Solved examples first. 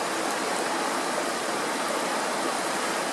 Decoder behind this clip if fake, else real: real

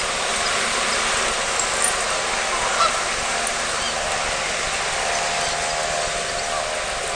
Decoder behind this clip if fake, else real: real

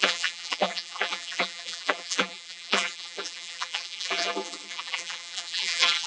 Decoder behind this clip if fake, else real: fake, vocoder, BigVGAN v2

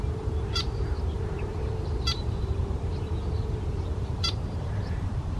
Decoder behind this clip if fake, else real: fake, vocoder, BigVGAN v2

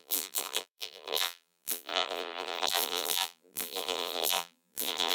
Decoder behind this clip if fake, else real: fake, vocoder, BigVGAN v2